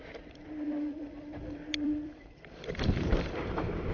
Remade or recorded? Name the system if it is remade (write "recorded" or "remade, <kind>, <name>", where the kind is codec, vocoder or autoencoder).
remade, vocoder, BigVGAN v2